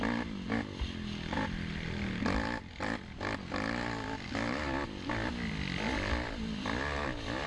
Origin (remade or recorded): recorded